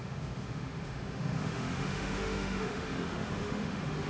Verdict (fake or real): fake